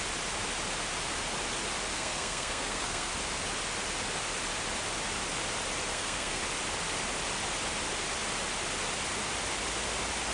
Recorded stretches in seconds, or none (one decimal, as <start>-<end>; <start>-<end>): 0.0-1.9; 3.1-5.9; 6.4-10.3